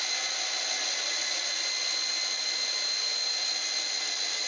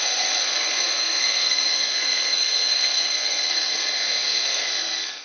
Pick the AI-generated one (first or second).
second